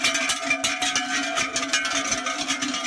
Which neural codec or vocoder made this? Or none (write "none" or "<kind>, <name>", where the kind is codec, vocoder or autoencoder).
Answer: none